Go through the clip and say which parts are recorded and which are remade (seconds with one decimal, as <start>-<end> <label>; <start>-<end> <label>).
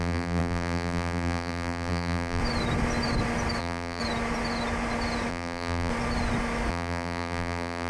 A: 0.0-2.4 remade; 2.4-3.6 recorded; 3.6-4.0 remade; 4.0-5.3 recorded; 5.3-5.9 remade; 5.9-6.7 recorded; 6.7-7.9 remade